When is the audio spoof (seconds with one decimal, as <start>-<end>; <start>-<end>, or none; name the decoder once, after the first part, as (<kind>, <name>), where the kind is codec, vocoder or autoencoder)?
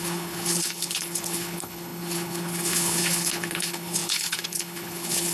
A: 0.0-5.3 (codec, HILCodec)